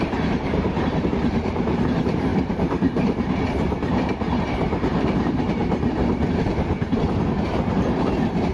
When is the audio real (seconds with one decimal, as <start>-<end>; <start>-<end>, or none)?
5.6-7.4